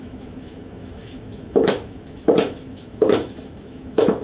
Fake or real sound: fake